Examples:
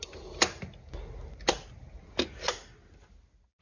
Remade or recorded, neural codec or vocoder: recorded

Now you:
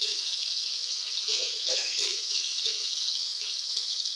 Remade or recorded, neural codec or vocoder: remade, codec, SNAC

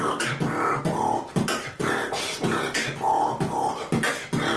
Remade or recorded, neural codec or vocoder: recorded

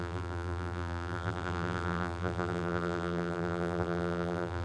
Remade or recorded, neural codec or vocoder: remade, vocoder, BigVGAN v2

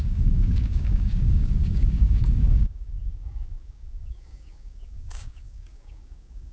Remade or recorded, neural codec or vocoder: remade, codec, DAC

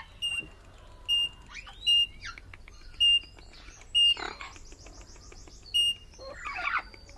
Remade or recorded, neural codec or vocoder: recorded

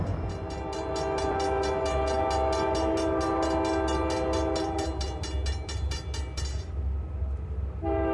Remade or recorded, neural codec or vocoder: recorded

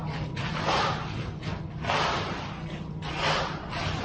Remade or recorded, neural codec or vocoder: recorded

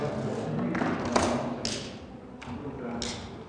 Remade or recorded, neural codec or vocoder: recorded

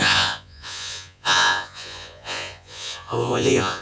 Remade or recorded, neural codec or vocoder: remade, vocoder, Vocos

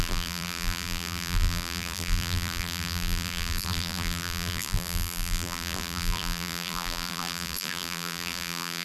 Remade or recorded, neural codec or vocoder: remade, vocoder, BigVGAN v2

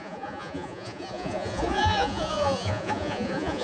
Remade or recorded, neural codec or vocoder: remade, vocoder, Vocos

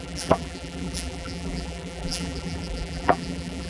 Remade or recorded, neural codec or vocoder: remade, vocoder, BigVGAN v2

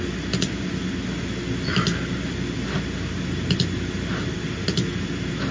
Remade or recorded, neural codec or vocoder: recorded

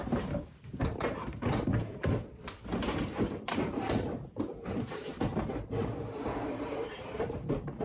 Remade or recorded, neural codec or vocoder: remade, vocoder, BigVGAN v2